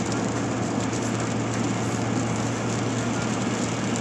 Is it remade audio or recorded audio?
recorded